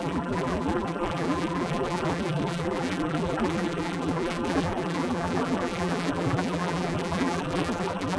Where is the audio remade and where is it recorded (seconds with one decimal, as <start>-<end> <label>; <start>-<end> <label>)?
0.0-8.2 remade